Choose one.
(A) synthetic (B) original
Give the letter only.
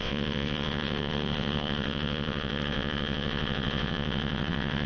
A